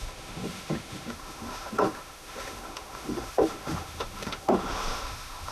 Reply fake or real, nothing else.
fake